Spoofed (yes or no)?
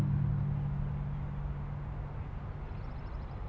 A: no